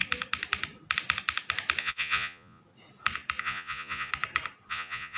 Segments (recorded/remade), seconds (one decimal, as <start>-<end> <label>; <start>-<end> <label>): 0.0-1.8 recorded; 1.8-2.6 remade; 2.6-3.4 recorded; 3.4-4.1 remade; 4.1-4.7 recorded; 4.7-5.2 remade